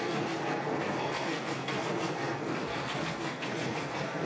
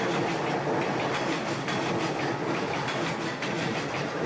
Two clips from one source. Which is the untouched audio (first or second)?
second